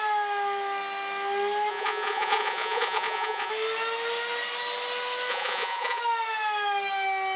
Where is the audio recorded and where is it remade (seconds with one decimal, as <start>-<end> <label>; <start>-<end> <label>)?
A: 0.0-1.7 recorded; 1.7-3.5 remade; 3.5-5.3 recorded; 5.3-6.0 remade; 6.0-7.4 recorded